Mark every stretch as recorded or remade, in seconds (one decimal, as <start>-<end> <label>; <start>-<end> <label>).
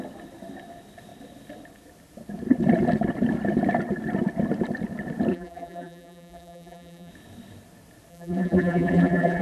0.0-5.3 recorded; 5.3-7.1 remade; 7.1-8.1 recorded; 8.1-9.4 remade